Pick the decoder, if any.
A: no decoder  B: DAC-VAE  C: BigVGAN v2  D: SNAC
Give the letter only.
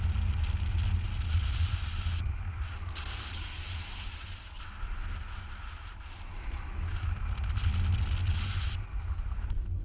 A